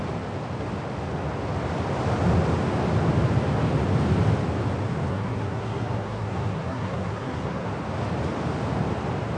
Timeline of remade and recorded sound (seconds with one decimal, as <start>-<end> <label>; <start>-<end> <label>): 0.0-5.1 recorded; 5.1-7.7 remade; 7.7-9.4 recorded